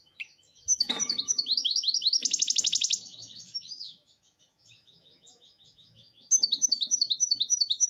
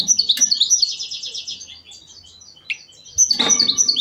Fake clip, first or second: first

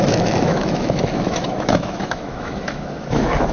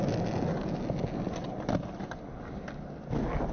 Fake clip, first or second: first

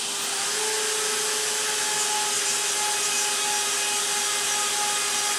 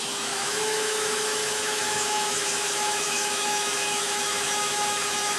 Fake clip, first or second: second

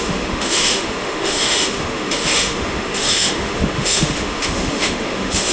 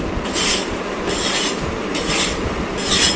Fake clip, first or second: first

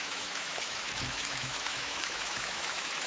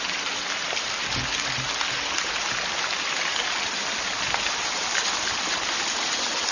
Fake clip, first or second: first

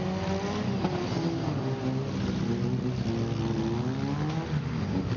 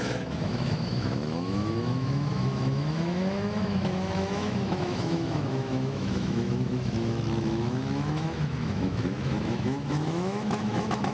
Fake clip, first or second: second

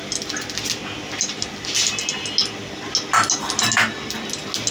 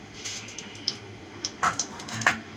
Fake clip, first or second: second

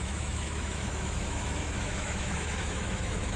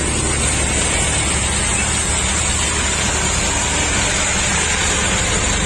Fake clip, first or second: first